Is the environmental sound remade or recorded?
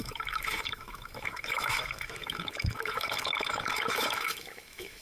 remade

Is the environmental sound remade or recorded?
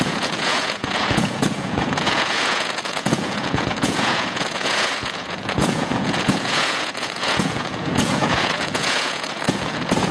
remade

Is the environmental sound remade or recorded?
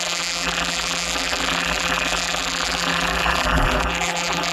remade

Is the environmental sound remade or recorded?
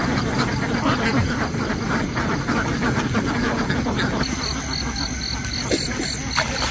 recorded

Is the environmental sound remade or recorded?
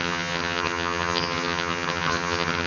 remade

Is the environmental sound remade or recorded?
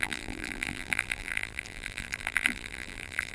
remade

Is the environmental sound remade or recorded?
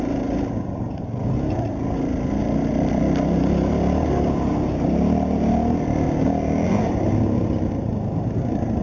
recorded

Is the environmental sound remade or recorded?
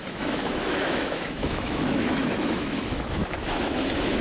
remade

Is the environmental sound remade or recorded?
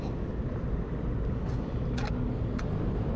recorded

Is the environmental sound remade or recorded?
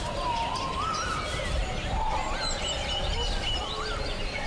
recorded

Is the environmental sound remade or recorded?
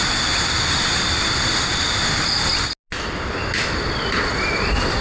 recorded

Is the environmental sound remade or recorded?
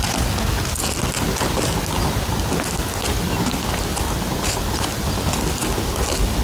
recorded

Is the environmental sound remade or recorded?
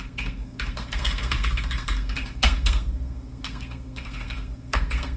remade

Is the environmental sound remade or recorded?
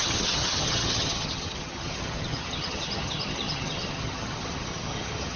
remade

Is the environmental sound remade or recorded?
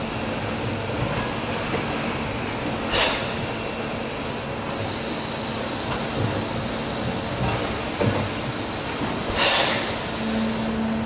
recorded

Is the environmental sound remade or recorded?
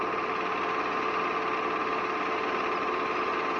recorded